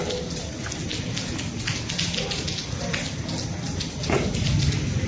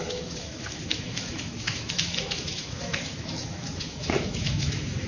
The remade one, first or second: second